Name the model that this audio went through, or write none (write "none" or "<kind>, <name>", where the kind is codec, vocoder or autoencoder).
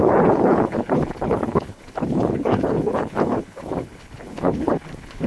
codec, HILCodec